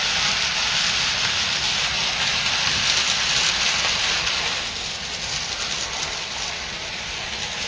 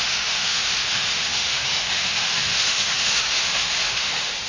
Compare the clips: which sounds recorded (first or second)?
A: first